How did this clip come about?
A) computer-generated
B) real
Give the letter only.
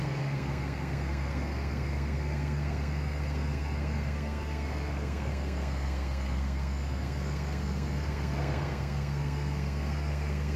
A